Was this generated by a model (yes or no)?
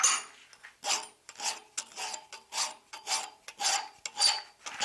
no